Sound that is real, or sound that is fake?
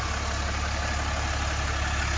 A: real